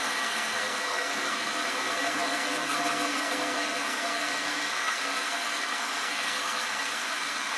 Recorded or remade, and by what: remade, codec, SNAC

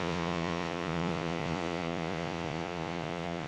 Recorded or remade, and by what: remade, vocoder, Vocos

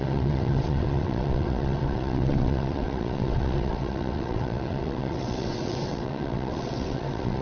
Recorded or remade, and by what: remade, vocoder, WaveNeXt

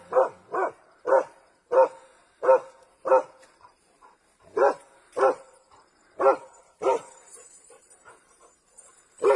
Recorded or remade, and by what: remade, vocoder, BigVGAN v2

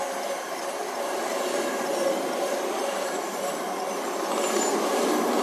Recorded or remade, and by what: recorded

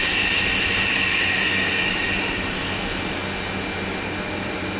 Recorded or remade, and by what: recorded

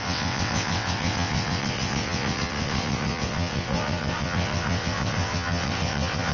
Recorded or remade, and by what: remade, vocoder, WaveNeXt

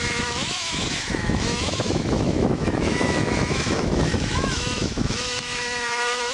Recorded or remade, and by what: remade, autoencoder, DAC-VAE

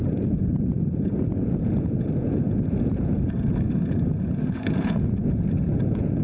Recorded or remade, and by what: remade, vocoder, Vocos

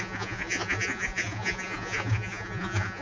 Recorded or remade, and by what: remade, vocoder, Vocos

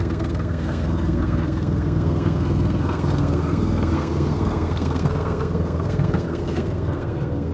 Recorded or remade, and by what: remade, codec, SNAC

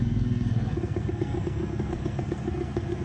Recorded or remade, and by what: remade, codec, SNAC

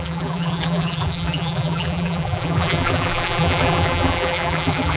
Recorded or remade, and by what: remade, vocoder, BigVGAN v2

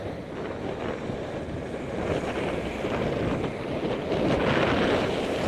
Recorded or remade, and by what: recorded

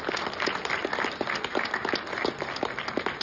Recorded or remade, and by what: recorded